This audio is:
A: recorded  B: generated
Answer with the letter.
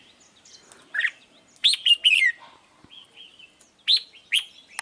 A